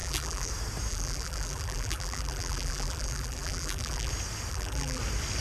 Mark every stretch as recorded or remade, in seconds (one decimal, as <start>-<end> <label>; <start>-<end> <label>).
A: 0.0-0.5 remade; 0.5-0.9 recorded; 0.9-4.1 remade; 4.1-4.5 recorded; 4.5-5.0 remade; 5.0-5.4 recorded